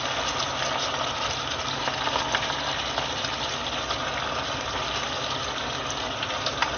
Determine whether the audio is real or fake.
real